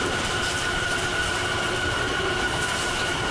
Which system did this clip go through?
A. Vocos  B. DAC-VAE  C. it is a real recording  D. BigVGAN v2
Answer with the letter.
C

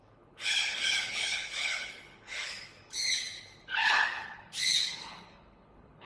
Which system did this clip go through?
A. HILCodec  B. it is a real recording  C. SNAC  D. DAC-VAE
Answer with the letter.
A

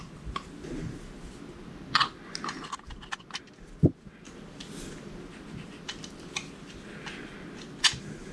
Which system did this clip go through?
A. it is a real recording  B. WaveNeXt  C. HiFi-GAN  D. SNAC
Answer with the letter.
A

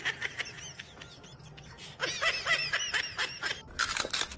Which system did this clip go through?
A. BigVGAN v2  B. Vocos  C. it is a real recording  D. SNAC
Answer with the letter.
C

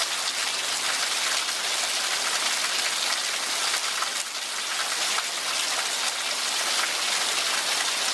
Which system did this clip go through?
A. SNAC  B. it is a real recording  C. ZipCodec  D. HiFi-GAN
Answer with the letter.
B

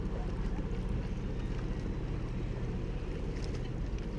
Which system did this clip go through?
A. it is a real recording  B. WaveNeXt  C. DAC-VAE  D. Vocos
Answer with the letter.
A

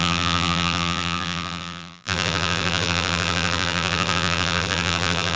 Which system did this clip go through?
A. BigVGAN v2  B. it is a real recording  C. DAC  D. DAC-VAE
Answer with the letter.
A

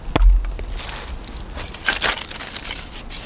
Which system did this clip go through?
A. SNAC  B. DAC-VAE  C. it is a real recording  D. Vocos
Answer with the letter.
C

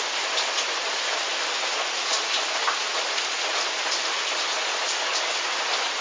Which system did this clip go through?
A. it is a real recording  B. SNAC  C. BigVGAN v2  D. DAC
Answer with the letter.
A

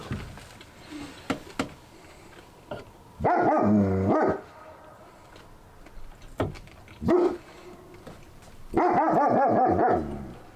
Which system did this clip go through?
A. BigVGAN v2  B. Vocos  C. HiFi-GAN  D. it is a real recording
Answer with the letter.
D